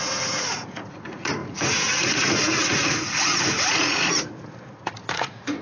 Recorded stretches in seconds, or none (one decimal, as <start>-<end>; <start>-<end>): none